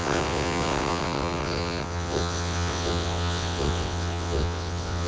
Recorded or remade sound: remade